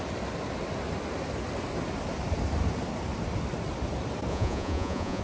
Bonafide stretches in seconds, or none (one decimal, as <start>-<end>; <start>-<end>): 0.0-4.3